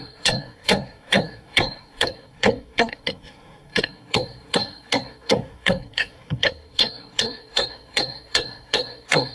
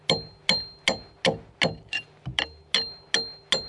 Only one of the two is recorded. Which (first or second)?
second